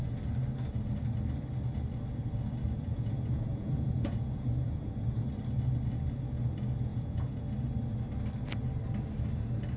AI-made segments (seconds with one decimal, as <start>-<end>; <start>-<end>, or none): 2.9-5.3; 6.9-7.4